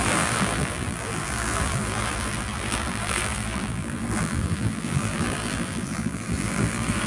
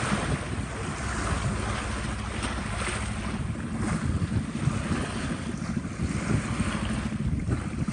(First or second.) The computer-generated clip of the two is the first